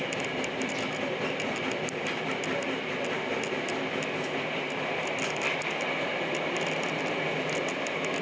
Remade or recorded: recorded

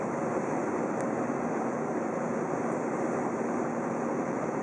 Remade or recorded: remade